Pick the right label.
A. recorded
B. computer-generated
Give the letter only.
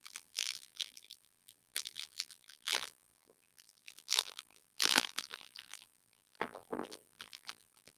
B